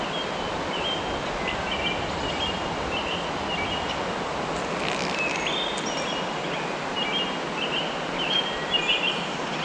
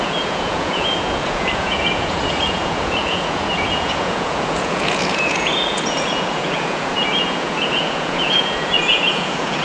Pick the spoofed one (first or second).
second